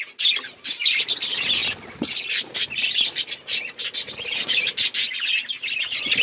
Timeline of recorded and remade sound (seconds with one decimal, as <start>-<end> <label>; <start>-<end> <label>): 0.0-6.2 recorded